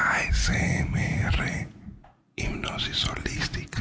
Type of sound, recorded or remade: remade